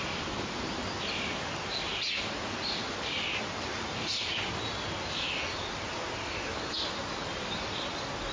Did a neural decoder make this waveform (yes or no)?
no